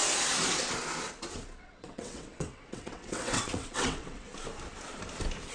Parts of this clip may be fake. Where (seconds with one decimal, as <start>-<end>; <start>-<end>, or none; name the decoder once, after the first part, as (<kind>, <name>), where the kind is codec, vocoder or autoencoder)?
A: 1.6-4.3 (vocoder, WaveNeXt)